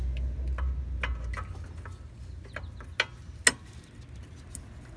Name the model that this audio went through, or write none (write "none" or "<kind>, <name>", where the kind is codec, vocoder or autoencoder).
none